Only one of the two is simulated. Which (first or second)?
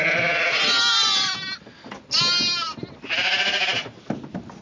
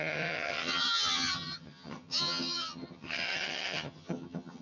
second